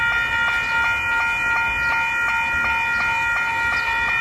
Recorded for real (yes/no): yes